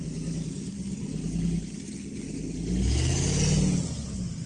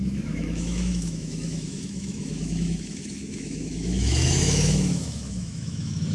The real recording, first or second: first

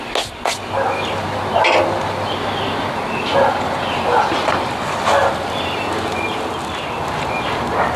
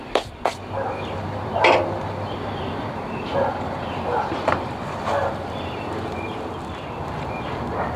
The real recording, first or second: first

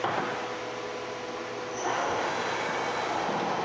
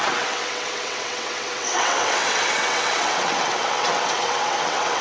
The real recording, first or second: first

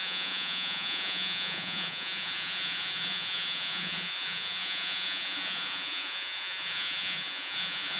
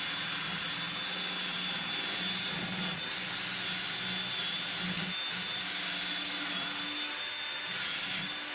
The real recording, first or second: second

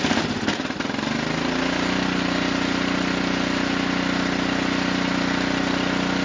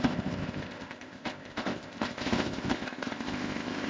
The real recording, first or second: first